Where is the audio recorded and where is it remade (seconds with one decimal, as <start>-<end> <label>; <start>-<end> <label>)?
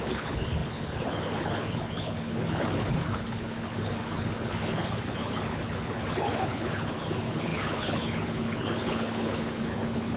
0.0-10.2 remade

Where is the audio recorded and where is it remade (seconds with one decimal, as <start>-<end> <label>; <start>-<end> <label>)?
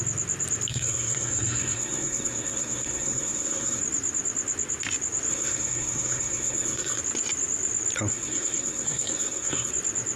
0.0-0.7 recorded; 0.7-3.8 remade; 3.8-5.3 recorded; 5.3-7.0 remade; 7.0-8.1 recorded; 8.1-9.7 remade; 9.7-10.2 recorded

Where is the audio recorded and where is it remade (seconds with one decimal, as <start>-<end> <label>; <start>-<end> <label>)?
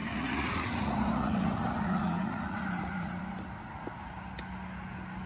0.0-3.2 remade; 3.2-5.3 recorded